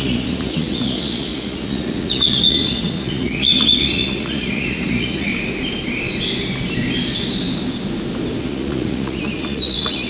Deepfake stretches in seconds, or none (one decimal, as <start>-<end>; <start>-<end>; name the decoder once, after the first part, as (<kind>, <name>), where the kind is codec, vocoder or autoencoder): 0.0-5.3 (vocoder, Vocos); 8.4-10.1

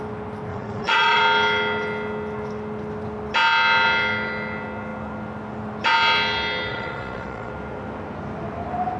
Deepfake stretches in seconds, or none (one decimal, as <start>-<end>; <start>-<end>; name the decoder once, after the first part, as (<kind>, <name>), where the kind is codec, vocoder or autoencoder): 0.5-1.2 (vocoder, Vocos); 6.7-7.5

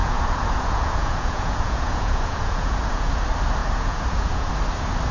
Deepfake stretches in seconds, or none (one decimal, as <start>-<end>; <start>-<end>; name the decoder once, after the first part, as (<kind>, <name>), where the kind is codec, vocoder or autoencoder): 0.0-3.1 (vocoder, Vocos); 3.6-4.5

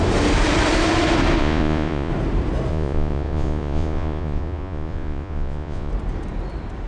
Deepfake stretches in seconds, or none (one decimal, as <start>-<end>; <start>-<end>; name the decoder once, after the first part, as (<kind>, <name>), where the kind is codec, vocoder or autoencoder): 1.4-2.1 (vocoder, Vocos); 2.7-5.9

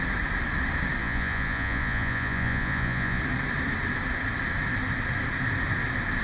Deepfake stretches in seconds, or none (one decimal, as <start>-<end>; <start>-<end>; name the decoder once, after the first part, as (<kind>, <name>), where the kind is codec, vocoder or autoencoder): 1.0-3.2 (vocoder, Vocos)

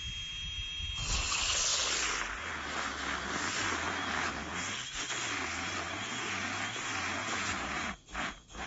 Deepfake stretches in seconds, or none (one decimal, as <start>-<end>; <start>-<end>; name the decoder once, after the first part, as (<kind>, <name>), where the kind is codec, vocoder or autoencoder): 7.2-8.7 (vocoder, Vocos)

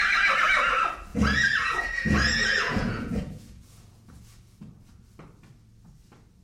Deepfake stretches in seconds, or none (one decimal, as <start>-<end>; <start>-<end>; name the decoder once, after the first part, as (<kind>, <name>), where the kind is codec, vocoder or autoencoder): 1.1-4.7 (vocoder, Vocos)